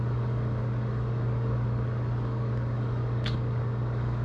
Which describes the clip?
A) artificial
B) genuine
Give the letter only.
A